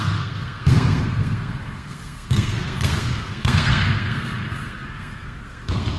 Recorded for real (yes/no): no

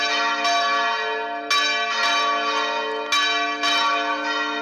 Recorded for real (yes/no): yes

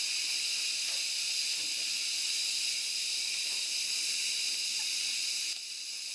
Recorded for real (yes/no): yes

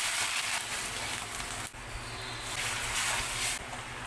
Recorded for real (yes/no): yes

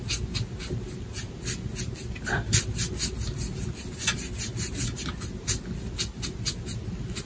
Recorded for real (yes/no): yes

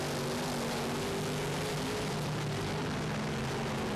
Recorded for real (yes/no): yes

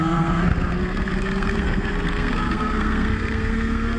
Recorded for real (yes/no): no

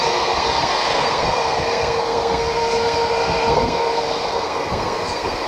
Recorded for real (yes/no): no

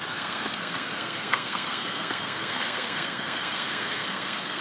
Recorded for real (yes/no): no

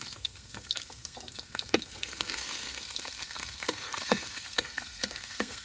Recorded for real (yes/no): no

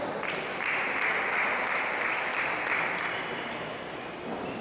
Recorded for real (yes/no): yes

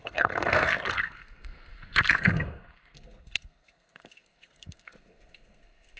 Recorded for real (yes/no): no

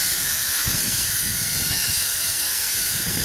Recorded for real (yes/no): no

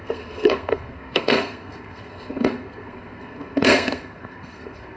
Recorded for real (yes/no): no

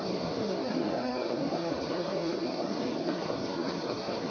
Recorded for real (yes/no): no